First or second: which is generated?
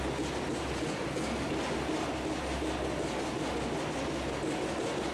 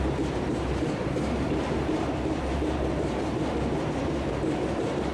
second